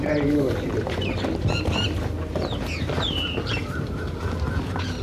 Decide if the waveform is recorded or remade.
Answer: recorded